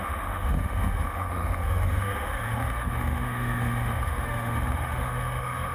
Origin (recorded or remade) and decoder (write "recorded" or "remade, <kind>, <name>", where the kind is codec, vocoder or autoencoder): remade, autoencoder, DAC-VAE